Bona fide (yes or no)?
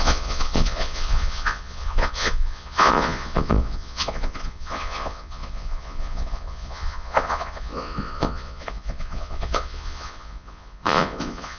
no